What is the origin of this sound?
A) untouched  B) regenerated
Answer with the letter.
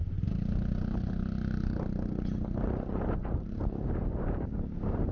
B